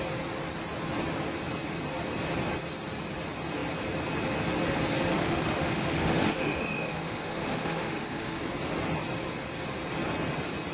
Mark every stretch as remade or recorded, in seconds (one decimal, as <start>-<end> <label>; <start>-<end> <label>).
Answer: 0.0-5.1 recorded; 5.1-8.4 remade; 8.4-10.7 recorded